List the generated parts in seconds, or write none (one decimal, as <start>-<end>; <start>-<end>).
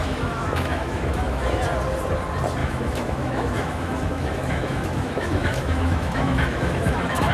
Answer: 0.0-1.6; 2.6-7.3